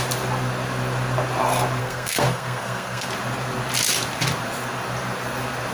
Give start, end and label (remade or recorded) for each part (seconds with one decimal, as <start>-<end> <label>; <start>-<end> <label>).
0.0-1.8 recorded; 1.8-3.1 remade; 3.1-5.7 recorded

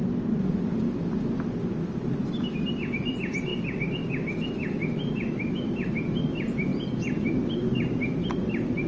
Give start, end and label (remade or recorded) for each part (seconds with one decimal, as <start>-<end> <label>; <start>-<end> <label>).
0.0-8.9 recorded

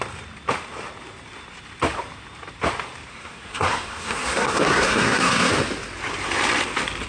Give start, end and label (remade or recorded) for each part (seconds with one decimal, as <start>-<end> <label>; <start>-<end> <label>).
0.0-3.1 recorded; 3.1-5.5 remade; 5.5-7.1 recorded

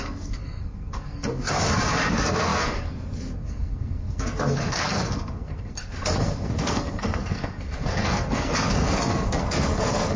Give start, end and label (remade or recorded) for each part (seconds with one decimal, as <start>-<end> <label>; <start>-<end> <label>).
0.0-1.6 remade; 1.6-2.1 recorded; 2.1-10.2 remade

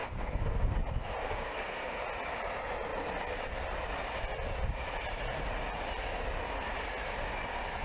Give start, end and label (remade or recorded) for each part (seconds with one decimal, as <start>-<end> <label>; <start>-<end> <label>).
0.0-0.7 remade; 0.7-1.2 recorded; 1.2-2.0 remade; 2.0-7.8 recorded